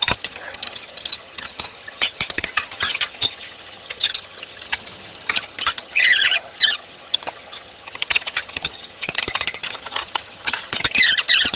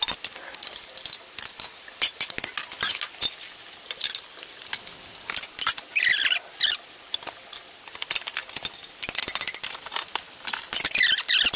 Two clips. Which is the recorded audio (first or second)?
second